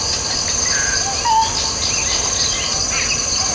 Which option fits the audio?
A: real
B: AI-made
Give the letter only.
A